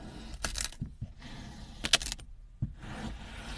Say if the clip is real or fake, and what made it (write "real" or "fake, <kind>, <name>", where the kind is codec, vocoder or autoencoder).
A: real